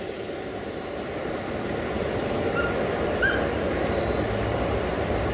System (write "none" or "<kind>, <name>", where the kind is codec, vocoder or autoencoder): none